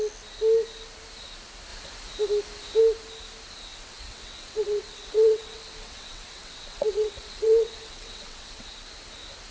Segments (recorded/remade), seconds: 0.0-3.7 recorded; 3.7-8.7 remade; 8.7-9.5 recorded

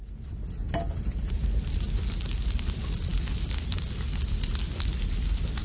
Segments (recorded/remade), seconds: 0.0-5.6 recorded

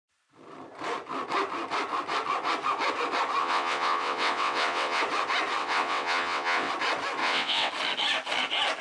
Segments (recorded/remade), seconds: 0.0-3.4 recorded; 3.4-5.0 remade; 5.0-5.6 recorded; 5.6-6.7 remade; 6.7-7.2 recorded; 7.2-7.7 remade; 7.7-8.8 recorded

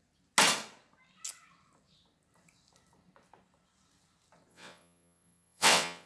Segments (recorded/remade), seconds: 0.0-4.5 recorded; 4.5-6.1 remade

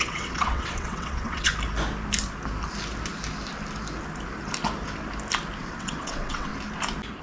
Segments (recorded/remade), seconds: 0.0-1.5 remade; 1.5-5.6 recorded; 5.6-6.5 remade; 6.5-7.2 recorded